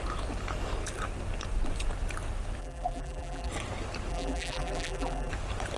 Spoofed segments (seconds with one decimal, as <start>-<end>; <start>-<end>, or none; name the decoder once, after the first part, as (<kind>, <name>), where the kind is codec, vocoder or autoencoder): 2.6-3.5 (vocoder, BigVGAN v2); 4.1-5.3